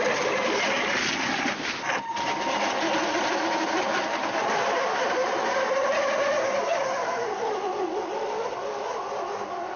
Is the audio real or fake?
real